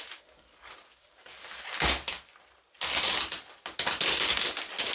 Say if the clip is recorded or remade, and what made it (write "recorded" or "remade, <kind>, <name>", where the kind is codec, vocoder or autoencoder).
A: recorded